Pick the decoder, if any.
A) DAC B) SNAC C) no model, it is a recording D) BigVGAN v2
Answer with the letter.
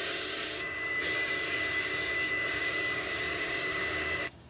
A